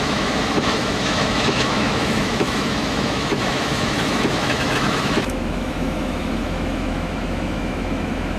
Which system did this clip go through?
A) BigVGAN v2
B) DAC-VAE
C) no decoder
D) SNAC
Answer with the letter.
B